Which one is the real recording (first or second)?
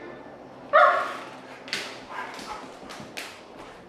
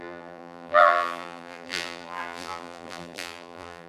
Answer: first